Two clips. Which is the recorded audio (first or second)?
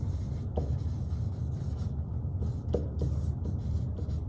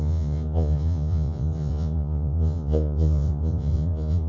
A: first